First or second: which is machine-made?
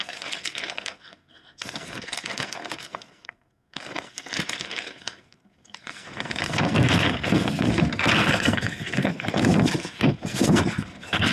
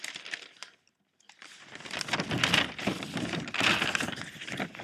first